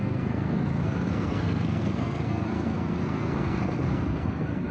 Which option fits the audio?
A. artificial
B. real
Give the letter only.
A